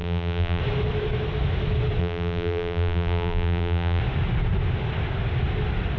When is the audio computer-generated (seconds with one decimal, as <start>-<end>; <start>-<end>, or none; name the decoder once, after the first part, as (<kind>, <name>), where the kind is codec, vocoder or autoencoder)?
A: 0.0-0.6 (vocoder, BigVGAN v2); 2.0-4.0